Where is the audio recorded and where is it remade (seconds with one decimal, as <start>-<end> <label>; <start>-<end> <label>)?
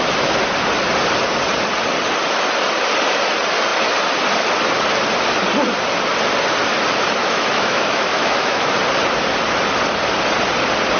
0.0-7.2 recorded; 7.2-8.7 remade; 8.7-11.0 recorded